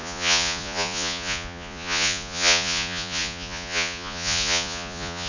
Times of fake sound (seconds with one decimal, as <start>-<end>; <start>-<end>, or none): 0.0-5.3